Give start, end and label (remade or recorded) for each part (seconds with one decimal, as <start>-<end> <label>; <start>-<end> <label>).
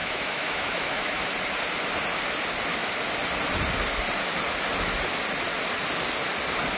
0.0-1.2 remade; 1.2-6.8 recorded